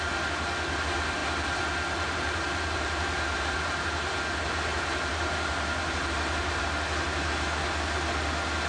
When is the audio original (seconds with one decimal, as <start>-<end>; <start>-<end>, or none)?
0.0-1.2; 4.2-4.7; 6.6-8.7